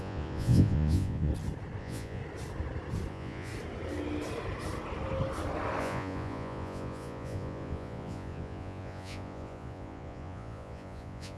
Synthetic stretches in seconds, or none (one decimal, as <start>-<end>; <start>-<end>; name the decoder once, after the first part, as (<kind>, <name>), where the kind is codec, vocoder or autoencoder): 0.0-1.3 (vocoder, Vocos); 1.8-2.2; 3.1-3.5; 5.8-11.4